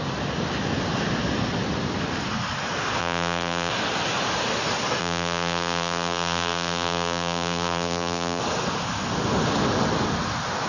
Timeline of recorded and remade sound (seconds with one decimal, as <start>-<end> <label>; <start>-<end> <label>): 0.0-3.0 recorded; 3.0-3.7 remade; 3.7-5.0 recorded; 5.0-8.4 remade; 8.4-10.7 recorded